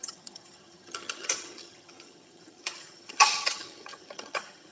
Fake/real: fake